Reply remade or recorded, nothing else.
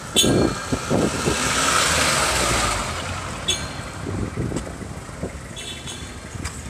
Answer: recorded